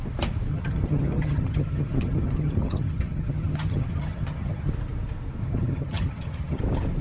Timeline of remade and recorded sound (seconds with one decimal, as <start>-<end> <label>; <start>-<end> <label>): 0.0-0.5 recorded; 0.5-4.7 remade; 4.7-5.4 recorded; 5.4-6.6 remade; 6.6-7.0 recorded